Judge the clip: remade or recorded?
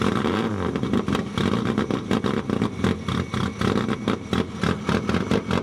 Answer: recorded